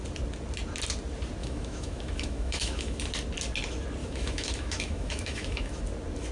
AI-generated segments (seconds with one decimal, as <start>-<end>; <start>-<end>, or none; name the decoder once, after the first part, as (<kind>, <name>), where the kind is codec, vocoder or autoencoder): 1.4-3.0 (autoencoder, DAC-VAE); 4.0-5.8

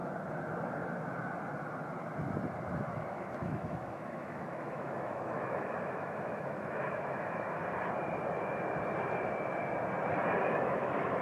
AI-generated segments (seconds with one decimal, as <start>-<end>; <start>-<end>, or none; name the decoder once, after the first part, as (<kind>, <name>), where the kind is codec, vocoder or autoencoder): 3.0-7.6 (autoencoder, DAC-VAE); 10.4-11.2

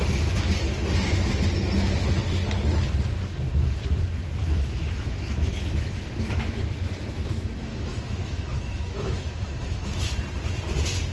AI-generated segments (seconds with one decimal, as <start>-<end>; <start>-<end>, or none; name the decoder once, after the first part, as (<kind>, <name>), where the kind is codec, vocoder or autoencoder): 4.4-6.6 (autoencoder, DAC-VAE); 7.7-10.1

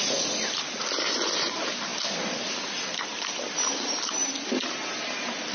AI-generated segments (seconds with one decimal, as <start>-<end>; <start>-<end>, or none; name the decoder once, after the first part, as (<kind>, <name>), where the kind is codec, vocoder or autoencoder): none

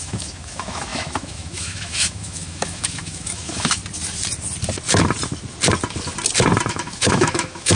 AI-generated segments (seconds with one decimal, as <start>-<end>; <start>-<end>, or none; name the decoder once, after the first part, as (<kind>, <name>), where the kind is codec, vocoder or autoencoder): 0.0-3.8 (autoencoder, DAC-VAE); 6.7-7.8

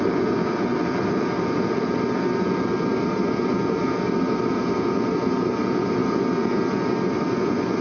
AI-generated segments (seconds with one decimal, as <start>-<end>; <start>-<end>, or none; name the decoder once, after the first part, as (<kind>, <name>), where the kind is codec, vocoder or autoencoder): none